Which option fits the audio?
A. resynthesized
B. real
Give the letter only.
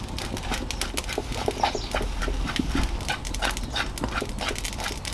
B